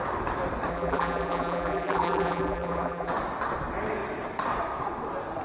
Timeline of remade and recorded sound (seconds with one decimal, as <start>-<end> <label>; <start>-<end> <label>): 0.0-0.7 recorded; 0.7-3.1 remade; 3.1-5.4 recorded